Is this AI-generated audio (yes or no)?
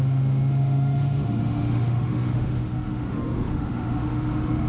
yes